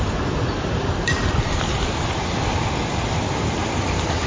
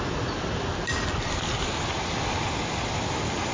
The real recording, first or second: second